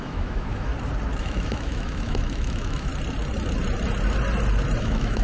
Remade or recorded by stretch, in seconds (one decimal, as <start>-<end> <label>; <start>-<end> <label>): 0.0-0.7 remade; 0.7-1.2 recorded; 1.2-2.9 remade; 2.9-4.8 recorded; 4.8-5.2 remade